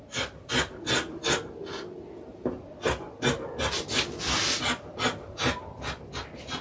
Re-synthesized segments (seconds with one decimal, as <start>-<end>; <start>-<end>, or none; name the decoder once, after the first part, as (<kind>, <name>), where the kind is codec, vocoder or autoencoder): none